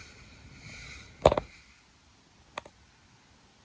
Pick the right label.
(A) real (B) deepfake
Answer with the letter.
A